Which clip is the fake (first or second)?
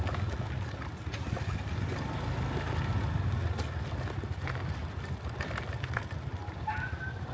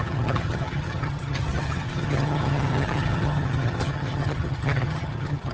second